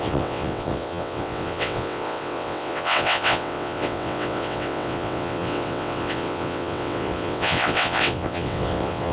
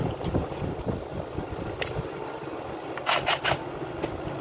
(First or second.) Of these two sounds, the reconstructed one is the first